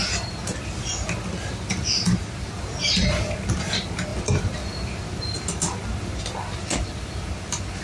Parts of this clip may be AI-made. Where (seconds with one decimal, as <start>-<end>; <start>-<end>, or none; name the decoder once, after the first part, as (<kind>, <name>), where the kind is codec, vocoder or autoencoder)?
none